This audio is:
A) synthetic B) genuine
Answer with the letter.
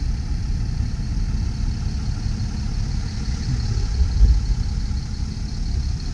B